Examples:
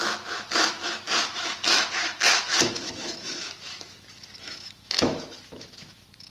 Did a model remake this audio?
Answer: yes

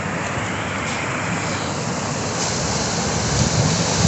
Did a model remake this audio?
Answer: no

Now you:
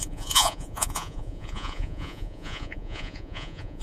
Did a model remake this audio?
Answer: yes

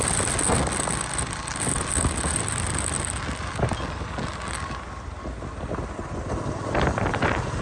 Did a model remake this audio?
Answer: no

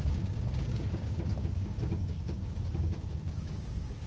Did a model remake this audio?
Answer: yes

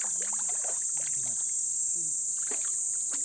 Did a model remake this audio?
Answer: no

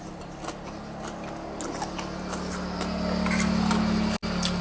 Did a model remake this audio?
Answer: no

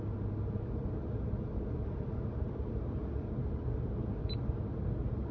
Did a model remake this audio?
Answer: no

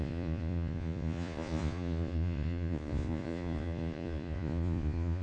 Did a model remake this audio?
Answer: yes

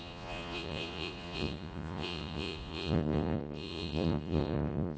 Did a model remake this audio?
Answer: yes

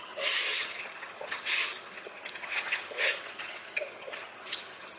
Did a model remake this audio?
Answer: yes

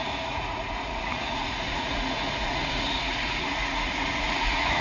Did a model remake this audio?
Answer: yes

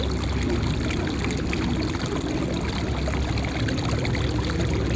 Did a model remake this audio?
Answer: no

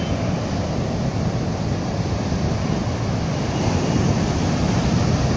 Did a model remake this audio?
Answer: no